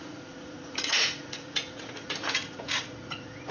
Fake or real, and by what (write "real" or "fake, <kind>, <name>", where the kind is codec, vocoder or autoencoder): fake, vocoder, Vocos